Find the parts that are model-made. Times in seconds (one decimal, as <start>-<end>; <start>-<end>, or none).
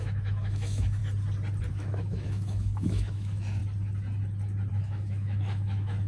0.0-1.0; 1.7-3.6; 4.7-6.1